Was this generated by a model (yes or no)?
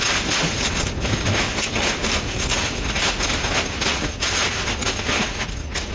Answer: no